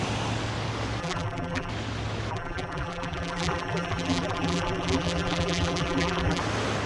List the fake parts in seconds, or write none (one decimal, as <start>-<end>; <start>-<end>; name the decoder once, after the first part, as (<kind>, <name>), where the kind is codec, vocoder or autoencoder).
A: 1.0-1.7 (vocoder, BigVGAN v2); 2.3-6.4